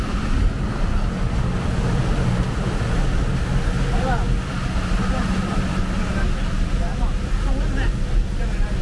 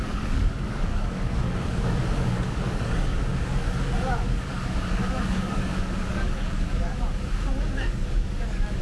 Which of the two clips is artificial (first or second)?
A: second